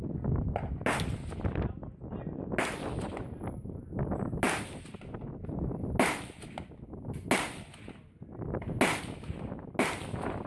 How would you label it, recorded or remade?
recorded